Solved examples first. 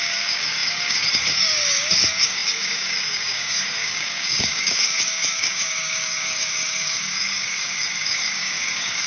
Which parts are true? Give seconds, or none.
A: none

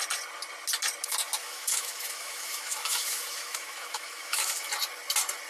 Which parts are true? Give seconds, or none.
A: 0.0-1.4; 4.7-5.5

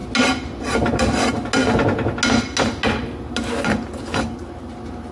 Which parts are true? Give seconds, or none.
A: 0.0-5.1